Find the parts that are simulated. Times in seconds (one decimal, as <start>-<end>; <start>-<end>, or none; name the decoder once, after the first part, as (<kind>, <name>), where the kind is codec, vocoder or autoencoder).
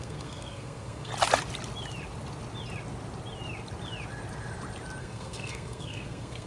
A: 0.0-1.1 (codec, SNAC); 5.0-6.5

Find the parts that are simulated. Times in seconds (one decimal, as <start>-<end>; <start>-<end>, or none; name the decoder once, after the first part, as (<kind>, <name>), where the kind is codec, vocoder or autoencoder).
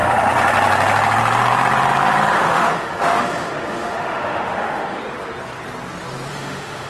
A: 2.3-5.0 (autoencoder, DAC-VAE); 6.3-6.9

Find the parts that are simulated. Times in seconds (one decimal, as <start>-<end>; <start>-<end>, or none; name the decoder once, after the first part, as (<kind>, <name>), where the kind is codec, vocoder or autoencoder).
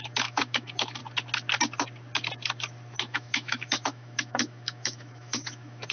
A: 0.0-1.0 (autoencoder, DAC-VAE); 3.0-5.9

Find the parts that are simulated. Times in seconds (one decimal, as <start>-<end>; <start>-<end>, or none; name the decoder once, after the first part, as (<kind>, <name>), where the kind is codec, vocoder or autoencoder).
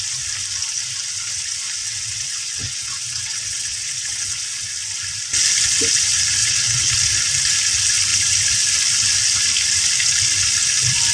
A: 1.8-4.7 (vocoder, WaveNeXt); 6.4-6.9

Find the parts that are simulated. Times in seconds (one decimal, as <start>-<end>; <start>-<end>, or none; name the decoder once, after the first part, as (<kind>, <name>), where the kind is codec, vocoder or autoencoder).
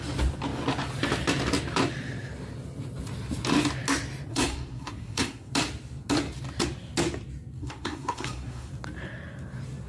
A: 4.3-5.5 (codec, SNAC); 7.6-8.7